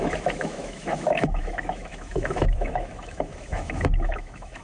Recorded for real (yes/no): no